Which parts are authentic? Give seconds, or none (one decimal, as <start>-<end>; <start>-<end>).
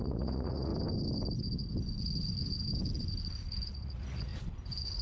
0.7-3.7; 4.3-5.0